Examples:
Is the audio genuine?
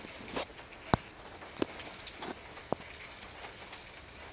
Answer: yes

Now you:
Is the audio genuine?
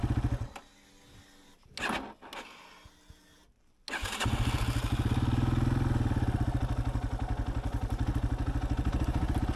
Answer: yes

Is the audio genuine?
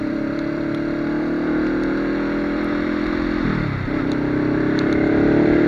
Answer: no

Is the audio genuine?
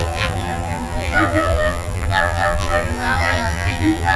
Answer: no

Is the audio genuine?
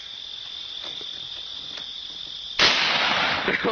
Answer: yes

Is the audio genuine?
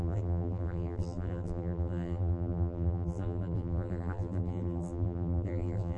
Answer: no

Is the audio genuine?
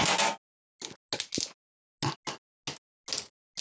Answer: yes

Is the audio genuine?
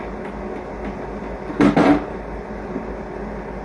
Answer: yes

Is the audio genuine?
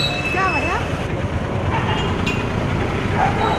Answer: yes